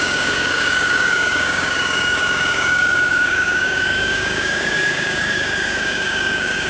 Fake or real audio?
fake